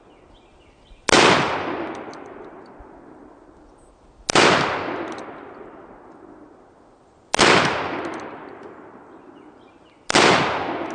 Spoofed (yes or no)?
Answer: no